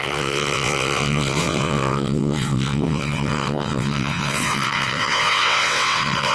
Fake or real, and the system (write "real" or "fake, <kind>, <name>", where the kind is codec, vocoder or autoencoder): fake, vocoder, WaveNeXt